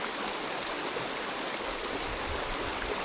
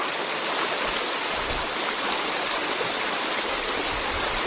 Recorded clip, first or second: first